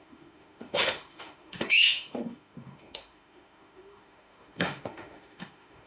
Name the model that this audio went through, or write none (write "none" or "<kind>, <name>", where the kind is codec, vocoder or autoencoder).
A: autoencoder, DAC-VAE